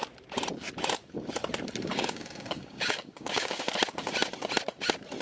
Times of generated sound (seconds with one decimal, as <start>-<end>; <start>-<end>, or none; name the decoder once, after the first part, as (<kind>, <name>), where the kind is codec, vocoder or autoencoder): 1.9-3.7 (codec, DAC)